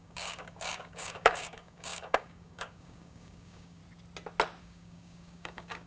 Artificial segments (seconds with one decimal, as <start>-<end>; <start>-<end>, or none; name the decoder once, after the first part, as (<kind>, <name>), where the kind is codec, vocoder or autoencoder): 0.0-3.8 (codec, DAC); 4.6-5.9